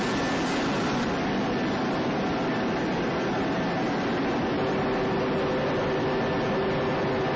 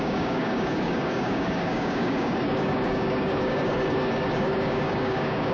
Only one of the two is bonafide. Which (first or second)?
first